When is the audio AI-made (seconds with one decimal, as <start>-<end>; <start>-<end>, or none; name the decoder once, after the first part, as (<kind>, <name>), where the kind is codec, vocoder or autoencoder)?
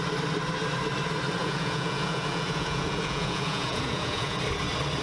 1.4-4.4 (vocoder, Vocos)